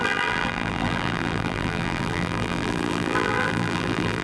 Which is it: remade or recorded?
remade